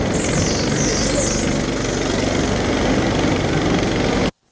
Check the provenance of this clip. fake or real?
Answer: real